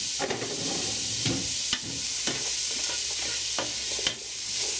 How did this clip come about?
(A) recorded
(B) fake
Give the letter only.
A